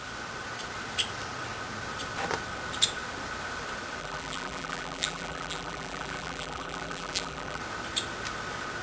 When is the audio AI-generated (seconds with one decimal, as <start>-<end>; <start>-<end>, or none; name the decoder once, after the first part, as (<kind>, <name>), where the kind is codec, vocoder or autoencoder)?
4.0-7.6 (vocoder, BigVGAN v2)

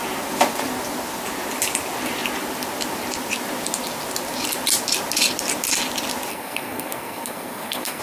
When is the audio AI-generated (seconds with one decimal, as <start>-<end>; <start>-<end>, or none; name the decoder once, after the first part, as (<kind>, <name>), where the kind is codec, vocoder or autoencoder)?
6.3-8.0 (codec, SNAC)